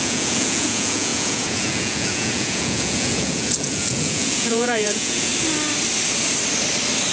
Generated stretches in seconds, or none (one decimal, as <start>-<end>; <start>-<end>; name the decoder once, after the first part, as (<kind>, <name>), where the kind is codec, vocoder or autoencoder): 0.0-5.3 (vocoder, Vocos)